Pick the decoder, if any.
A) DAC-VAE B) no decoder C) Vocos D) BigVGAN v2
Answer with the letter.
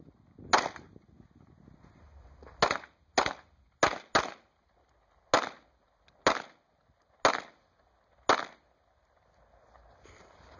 B